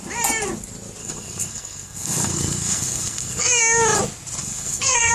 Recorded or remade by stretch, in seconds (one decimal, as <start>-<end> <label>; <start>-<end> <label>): 0.0-1.0 recorded; 1.0-3.6 remade; 3.6-4.4 recorded; 4.4-5.1 remade